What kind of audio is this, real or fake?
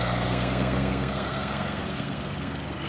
fake